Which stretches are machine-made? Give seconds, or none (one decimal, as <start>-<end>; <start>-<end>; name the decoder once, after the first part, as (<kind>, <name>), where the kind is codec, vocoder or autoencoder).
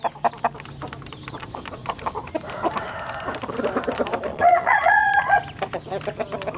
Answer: 4.3-5.4 (vocoder, Vocos)